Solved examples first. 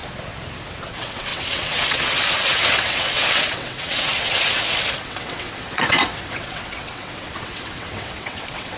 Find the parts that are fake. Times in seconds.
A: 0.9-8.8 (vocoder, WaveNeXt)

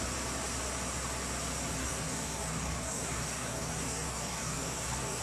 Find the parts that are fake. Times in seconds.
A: 1.8-5.2 (codec, DAC)